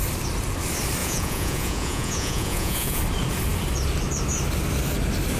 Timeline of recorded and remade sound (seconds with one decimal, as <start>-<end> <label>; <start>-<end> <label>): 0.0-1.0 recorded; 1.0-3.0 remade; 3.0-5.4 recorded